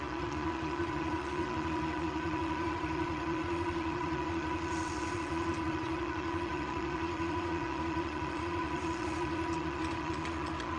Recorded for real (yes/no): no